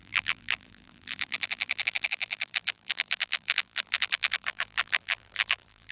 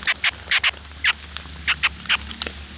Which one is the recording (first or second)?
second